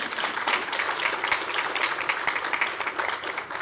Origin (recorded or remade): recorded